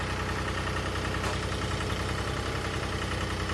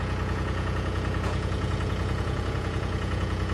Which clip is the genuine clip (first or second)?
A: first